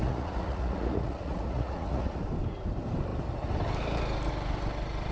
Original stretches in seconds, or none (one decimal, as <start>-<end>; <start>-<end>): 2.2-5.1